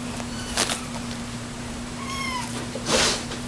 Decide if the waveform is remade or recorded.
remade